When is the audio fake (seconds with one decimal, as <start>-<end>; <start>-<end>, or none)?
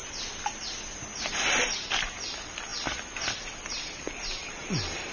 none